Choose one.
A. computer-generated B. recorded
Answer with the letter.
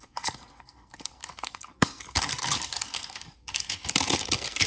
A